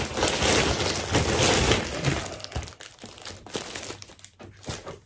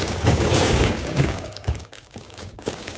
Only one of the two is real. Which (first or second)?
first